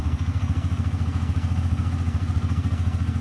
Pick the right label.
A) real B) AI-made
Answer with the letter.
B